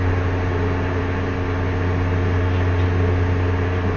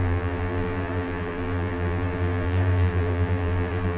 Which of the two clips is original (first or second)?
first